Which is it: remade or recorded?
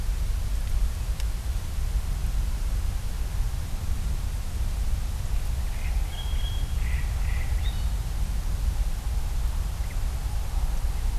recorded